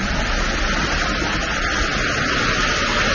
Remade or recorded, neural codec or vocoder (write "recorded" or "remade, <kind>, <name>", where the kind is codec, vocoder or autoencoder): recorded